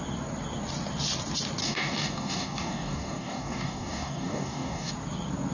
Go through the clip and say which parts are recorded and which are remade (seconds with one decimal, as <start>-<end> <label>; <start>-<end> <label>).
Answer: 0.0-1.6 recorded; 1.6-4.9 remade; 4.9-5.5 recorded